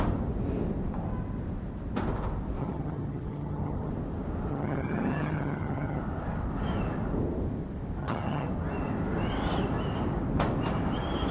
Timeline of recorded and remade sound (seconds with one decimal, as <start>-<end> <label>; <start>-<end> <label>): 0.0-2.6 recorded; 2.6-3.9 remade; 3.9-4.5 recorded; 4.5-6.0 remade; 6.0-8.0 recorded; 8.0-8.5 remade; 8.5-11.3 recorded